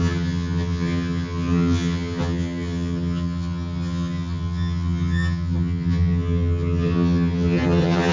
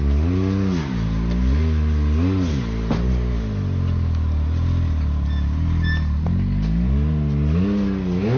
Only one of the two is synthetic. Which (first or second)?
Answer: first